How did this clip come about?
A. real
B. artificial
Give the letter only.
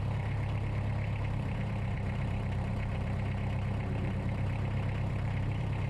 B